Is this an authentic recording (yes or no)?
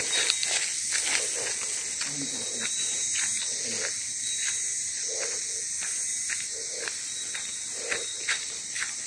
yes